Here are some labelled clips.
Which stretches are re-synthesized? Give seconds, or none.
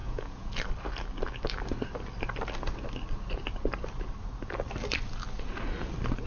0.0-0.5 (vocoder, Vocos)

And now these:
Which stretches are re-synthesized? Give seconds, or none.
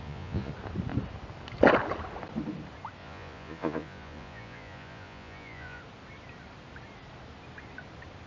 0.0-0.5 (vocoder, Vocos); 3.0-5.8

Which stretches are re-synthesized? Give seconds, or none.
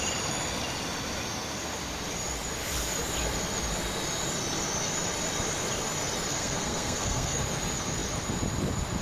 6.3-7.4 (codec, SNAC)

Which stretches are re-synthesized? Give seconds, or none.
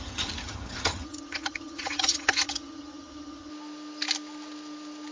0.0-3.5 (vocoder, HiFi-GAN)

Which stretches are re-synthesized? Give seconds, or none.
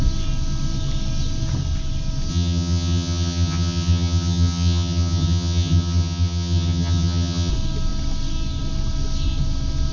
2.3-7.5 (vocoder, HiFi-GAN)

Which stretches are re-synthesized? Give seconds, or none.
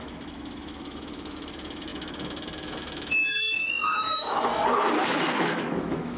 0.0-4.5 (autoencoder, DAC-VAE); 5.3-6.2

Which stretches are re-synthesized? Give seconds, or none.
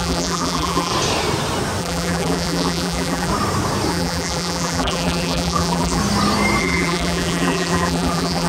0.0-0.9 (vocoder, BigVGAN v2); 1.8-3.3; 3.9-6.0; 6.6-8.5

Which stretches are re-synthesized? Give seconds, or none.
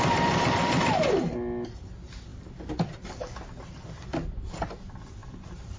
5.2-5.8 (vocoder, BigVGAN v2)